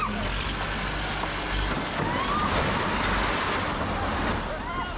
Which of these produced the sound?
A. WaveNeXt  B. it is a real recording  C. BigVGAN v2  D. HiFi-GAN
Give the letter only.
C